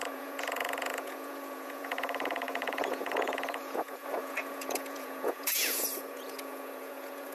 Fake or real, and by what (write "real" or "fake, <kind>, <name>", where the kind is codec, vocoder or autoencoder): fake, vocoder, Vocos